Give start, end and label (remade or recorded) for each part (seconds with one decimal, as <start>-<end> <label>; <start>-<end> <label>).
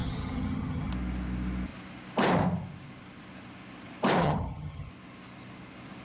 0.0-0.9 remade; 0.9-4.2 recorded; 4.2-4.9 remade; 4.9-6.0 recorded